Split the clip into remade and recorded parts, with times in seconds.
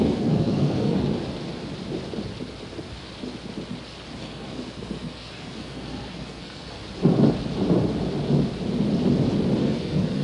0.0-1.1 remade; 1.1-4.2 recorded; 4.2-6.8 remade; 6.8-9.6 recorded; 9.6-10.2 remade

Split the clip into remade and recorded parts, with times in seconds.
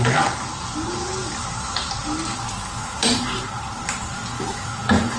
0.0-5.2 recorded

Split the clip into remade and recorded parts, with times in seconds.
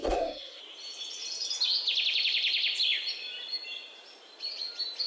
0.0-0.6 remade; 0.6-5.1 recorded